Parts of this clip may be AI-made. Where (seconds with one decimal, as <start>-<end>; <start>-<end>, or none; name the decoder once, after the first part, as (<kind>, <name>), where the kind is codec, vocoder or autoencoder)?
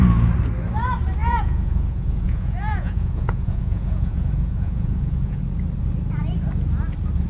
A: 1.2-5.4 (vocoder, Vocos)